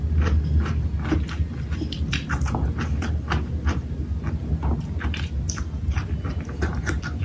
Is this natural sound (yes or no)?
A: yes